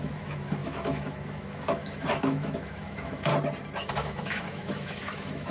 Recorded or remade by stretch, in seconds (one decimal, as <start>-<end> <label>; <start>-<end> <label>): 0.0-3.3 remade; 3.3-3.9 recorded; 3.9-5.5 remade

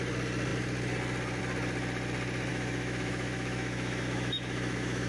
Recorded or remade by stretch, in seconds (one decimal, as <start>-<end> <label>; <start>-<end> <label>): 0.0-2.5 recorded; 2.5-5.1 remade